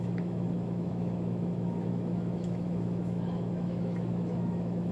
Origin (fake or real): fake